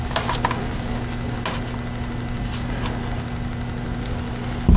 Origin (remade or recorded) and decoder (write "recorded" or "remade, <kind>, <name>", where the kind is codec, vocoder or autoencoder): recorded